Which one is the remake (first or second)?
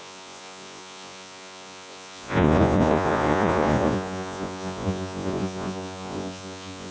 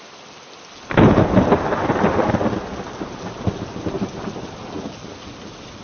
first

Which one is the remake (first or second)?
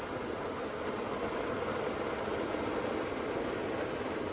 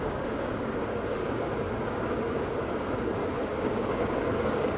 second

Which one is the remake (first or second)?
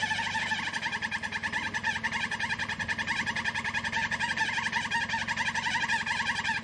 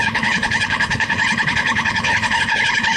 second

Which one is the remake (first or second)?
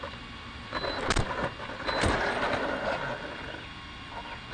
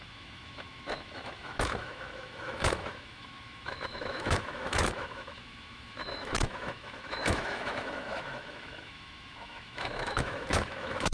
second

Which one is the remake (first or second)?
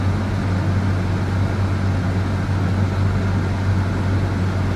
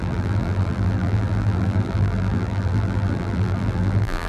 second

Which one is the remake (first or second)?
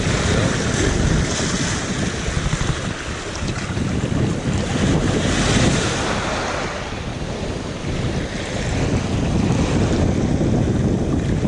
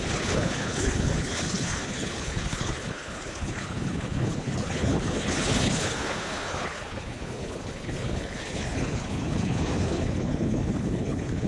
second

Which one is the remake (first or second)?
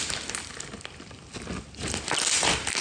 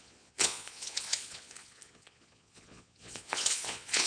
second